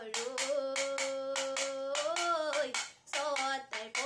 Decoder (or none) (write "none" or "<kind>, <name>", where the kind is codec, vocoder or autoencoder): none